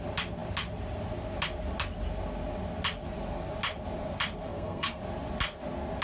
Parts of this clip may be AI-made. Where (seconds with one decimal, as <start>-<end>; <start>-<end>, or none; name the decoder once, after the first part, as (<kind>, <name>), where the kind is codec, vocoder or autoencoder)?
4.5-5.0 (codec, SNAC)